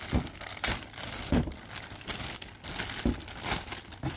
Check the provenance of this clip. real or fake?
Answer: real